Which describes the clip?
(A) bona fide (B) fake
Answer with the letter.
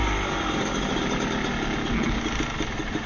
A